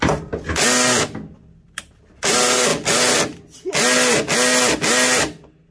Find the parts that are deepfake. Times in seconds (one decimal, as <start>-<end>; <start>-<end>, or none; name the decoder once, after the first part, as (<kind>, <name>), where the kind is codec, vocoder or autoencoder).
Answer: none